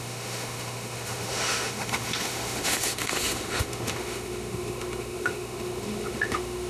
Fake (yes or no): yes